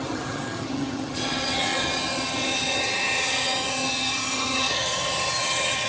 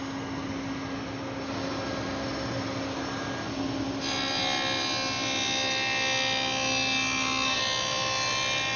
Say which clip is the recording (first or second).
second